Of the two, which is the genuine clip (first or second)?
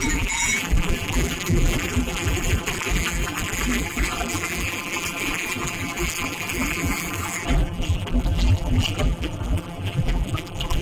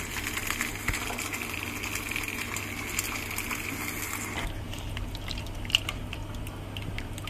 second